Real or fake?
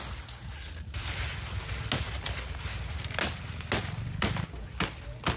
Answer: real